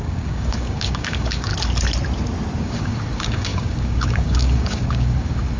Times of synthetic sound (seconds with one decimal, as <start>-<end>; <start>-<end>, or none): 0.0-1.5; 2.6-5.6